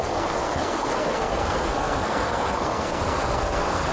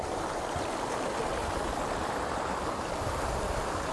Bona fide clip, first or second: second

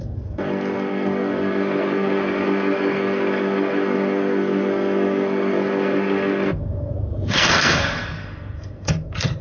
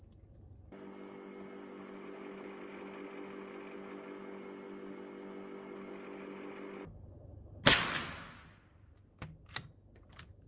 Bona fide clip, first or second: second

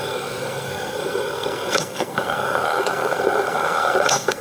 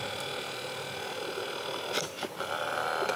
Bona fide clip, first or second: second